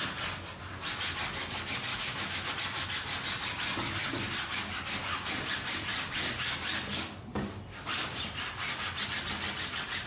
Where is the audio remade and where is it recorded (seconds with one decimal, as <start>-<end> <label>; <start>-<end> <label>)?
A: 0.0-1.9 recorded; 1.9-2.5 remade; 2.5-10.1 recorded